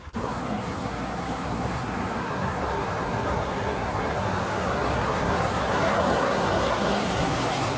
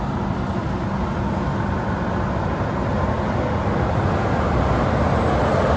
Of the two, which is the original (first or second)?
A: second